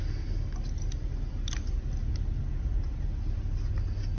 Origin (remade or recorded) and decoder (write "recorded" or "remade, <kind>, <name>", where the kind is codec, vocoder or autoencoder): recorded